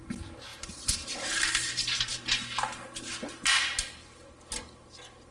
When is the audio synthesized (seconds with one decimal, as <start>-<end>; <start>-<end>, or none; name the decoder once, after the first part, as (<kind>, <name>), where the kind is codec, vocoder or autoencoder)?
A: none